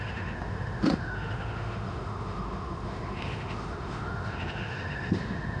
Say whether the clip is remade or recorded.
remade